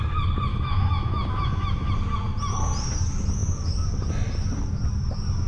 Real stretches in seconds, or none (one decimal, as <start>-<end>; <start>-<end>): 0.0-0.5; 1.9-5.5